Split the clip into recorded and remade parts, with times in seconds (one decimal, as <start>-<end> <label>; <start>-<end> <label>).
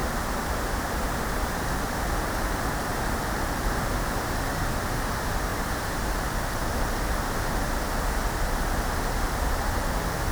0.0-0.9 recorded; 0.9-2.9 remade; 2.9-4.8 recorded; 4.8-5.5 remade; 5.5-9.8 recorded; 9.8-10.3 remade